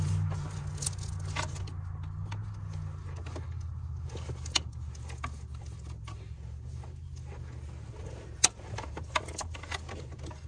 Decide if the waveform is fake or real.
real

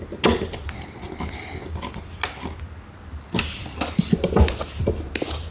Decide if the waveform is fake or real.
real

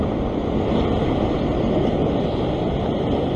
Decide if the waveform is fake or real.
real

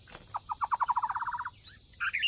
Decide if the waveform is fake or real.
real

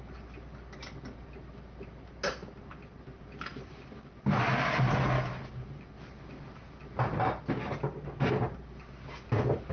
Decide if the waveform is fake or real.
real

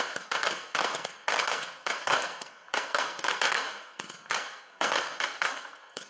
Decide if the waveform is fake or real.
fake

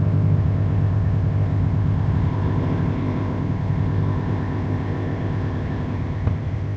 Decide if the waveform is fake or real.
fake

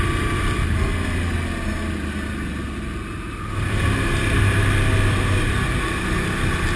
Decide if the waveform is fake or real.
real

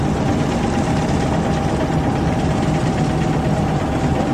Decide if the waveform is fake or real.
real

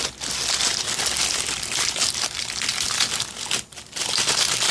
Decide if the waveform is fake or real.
real